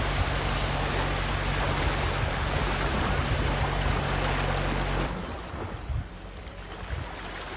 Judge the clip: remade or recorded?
recorded